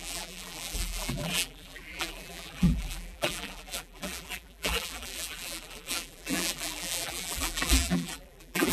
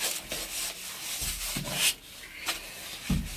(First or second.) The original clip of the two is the second